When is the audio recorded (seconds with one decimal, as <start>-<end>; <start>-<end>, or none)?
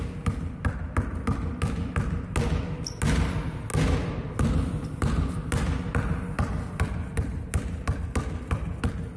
0.0-9.2